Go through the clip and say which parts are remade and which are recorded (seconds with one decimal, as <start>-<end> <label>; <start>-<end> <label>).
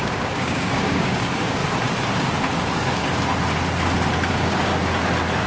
0.0-1.6 remade; 1.6-4.3 recorded; 4.3-4.7 remade; 4.7-5.5 recorded